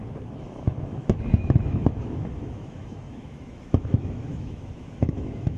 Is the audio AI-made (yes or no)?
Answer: yes